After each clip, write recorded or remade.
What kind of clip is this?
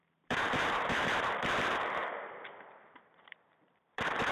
remade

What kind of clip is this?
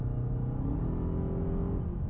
recorded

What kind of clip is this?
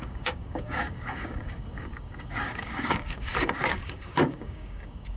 remade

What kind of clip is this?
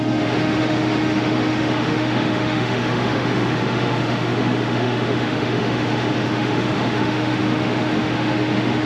remade